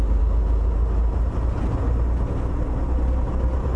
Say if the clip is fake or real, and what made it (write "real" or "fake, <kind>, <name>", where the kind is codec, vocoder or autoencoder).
real